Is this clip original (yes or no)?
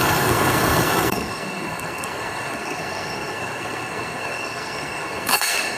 no